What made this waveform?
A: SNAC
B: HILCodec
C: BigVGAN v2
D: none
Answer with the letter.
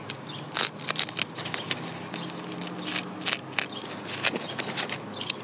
D